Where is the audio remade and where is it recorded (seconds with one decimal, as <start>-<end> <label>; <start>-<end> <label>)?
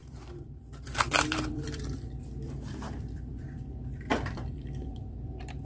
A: 0.0-5.7 remade